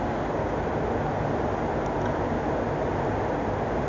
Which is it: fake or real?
real